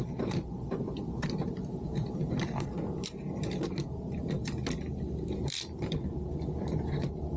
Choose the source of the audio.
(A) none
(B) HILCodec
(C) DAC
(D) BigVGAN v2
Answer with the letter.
D